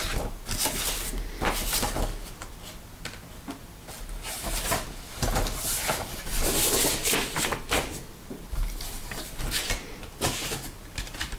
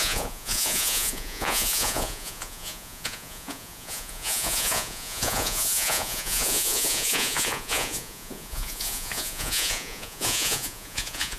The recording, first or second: first